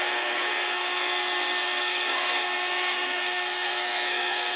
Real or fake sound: fake